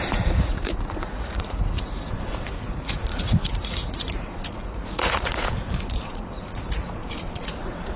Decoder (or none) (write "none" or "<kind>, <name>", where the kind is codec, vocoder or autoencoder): vocoder, Vocos